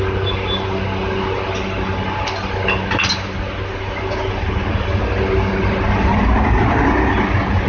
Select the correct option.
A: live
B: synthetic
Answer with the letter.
A